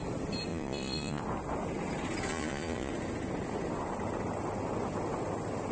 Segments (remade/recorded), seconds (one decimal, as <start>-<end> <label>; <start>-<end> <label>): 0.0-0.5 recorded; 0.5-1.2 remade; 1.2-2.3 recorded; 2.3-2.9 remade; 2.9-5.7 recorded